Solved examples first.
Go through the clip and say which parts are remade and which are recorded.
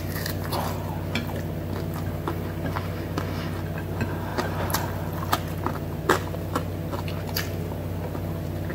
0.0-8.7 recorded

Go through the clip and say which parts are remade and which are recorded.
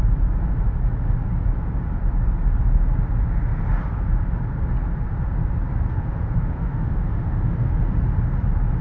0.0-5.9 recorded; 5.9-8.0 remade; 8.0-8.8 recorded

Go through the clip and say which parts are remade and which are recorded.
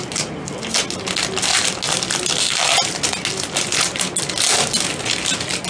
0.0-5.7 recorded